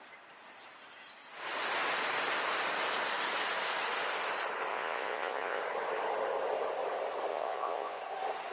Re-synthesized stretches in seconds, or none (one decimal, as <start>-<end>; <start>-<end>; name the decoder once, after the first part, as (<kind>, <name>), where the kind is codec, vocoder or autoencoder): 4.7-5.6 (vocoder, Vocos); 7.3-8.0